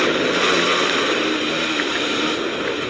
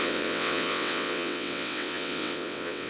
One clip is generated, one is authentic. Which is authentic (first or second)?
first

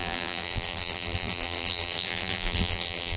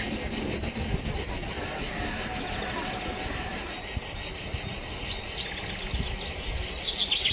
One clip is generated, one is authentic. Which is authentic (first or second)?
second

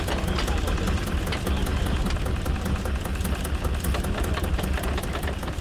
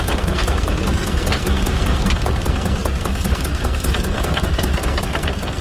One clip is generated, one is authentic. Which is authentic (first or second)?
first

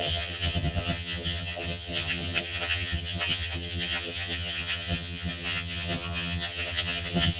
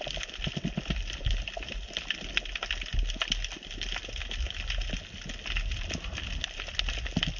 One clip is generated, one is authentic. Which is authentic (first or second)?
second